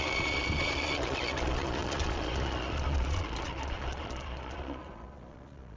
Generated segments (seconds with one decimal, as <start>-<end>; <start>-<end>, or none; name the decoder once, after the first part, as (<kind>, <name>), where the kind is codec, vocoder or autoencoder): 0.0-5.8 (vocoder, Vocos)